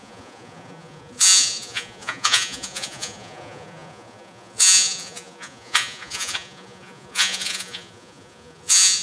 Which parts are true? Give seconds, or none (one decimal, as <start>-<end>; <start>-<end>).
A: none